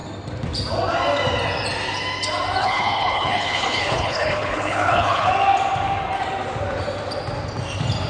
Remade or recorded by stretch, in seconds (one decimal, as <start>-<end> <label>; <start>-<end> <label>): 0.0-2.6 recorded; 2.6-5.3 remade; 5.3-8.1 recorded